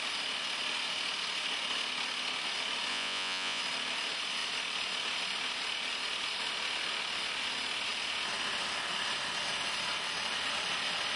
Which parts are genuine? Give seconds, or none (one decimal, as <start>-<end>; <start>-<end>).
0.0-2.9; 3.6-11.2